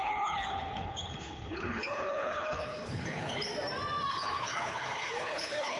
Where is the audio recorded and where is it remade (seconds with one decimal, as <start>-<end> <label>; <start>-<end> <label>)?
0.0-3.5 remade; 3.5-4.1 recorded; 4.1-5.8 remade